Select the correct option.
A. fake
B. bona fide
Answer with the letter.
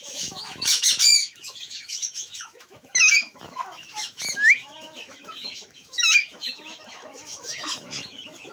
A